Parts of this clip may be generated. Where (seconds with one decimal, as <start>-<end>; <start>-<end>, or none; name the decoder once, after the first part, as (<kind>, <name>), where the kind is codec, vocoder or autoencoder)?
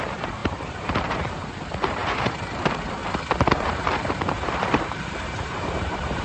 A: 0.0-3.0 (vocoder, BigVGAN v2); 3.5-6.2